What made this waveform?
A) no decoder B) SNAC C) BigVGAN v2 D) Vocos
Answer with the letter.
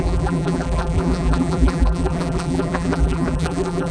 C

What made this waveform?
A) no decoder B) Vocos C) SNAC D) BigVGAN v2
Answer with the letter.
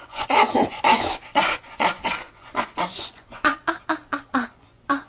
B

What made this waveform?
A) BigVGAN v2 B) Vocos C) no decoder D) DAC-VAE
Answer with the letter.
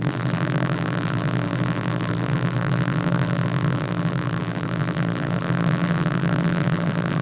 A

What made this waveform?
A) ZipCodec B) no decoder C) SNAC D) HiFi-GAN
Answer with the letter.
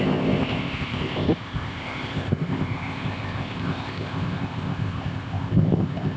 A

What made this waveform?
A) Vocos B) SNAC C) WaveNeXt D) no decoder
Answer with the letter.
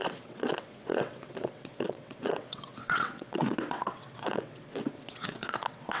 C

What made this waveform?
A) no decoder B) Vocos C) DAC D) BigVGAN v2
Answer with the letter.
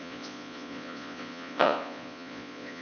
B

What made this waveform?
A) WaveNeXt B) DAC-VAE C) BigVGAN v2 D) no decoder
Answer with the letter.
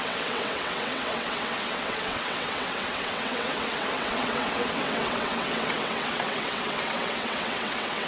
A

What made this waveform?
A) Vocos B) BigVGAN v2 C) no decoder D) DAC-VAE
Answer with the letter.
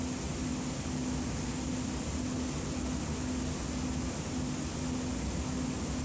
C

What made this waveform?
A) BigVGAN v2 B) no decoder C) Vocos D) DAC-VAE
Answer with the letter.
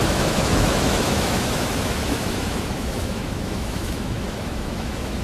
D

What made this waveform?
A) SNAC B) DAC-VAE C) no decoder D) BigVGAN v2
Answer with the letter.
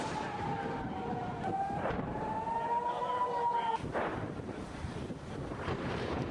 D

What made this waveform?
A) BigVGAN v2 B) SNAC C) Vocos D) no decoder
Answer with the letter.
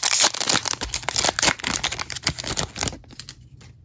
D